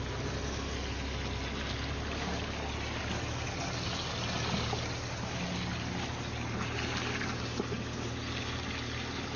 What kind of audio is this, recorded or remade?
recorded